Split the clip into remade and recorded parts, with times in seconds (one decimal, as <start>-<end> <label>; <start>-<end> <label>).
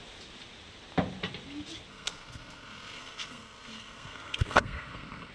0.0-1.9 recorded; 1.9-5.3 remade